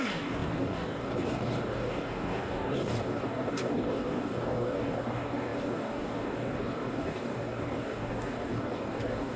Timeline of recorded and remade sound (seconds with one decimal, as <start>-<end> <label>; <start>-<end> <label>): 0.0-9.4 remade